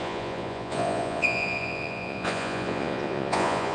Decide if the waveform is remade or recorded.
remade